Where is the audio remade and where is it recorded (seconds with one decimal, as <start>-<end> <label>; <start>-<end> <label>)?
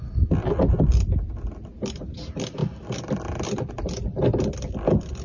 0.0-5.2 recorded